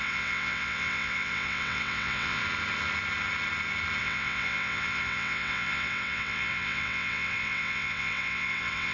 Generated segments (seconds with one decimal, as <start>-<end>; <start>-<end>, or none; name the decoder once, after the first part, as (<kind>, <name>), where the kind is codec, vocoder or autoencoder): 0.0-2.4 (vocoder, WaveNeXt); 4.0-8.9